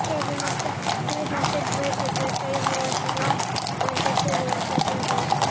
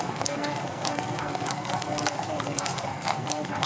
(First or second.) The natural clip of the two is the first